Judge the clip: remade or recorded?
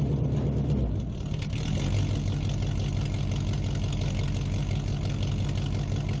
recorded